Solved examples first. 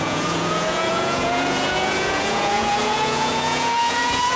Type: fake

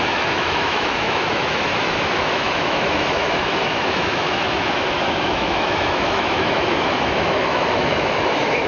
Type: fake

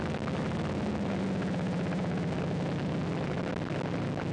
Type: real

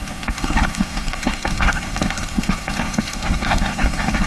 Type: fake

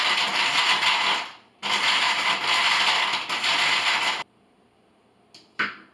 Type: real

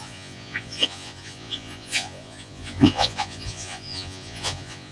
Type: fake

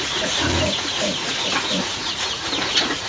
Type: fake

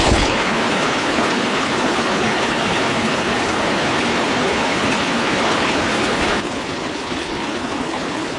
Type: fake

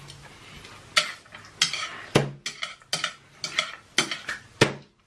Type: real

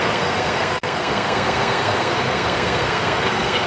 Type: fake